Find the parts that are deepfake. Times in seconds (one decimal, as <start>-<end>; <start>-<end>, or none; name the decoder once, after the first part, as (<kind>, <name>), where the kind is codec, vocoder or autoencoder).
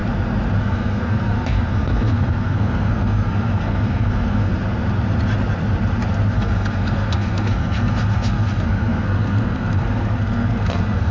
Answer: 0.6-4.5 (codec, SNAC); 6.3-11.1